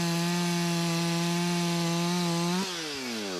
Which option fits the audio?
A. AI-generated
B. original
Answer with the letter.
B